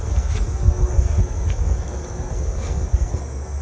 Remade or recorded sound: remade